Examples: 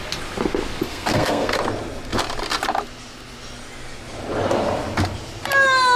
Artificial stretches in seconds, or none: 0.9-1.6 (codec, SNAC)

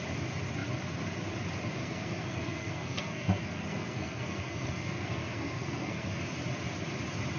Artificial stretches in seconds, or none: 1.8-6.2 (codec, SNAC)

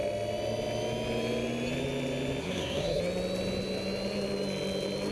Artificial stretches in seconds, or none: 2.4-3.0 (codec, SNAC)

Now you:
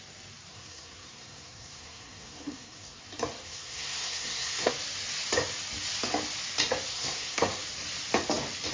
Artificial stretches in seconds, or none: 0.5-3.0 (codec, SNAC); 3.4-4.7; 6.9-7.6